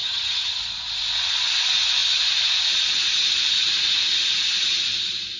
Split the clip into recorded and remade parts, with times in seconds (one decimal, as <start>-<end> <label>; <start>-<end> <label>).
0.0-0.6 remade; 0.6-5.4 recorded